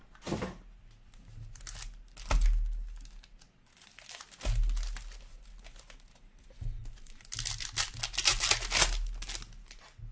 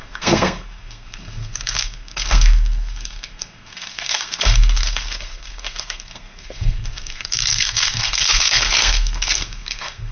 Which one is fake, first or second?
second